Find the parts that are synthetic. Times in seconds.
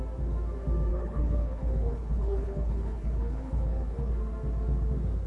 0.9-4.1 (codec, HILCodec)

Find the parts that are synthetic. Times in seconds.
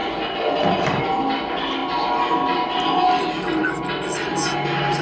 none